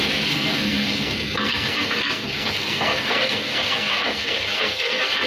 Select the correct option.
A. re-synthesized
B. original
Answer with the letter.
A